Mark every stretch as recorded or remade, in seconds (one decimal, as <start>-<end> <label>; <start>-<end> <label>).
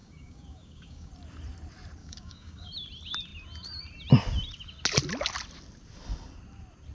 0.0-1.1 remade; 1.1-2.0 recorded; 2.0-2.7 remade; 2.7-6.9 recorded